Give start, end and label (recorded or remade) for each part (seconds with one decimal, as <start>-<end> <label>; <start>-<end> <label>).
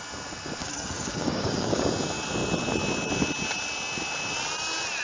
0.0-0.6 recorded; 0.6-1.8 remade; 1.8-5.0 recorded